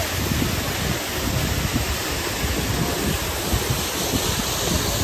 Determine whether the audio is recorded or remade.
recorded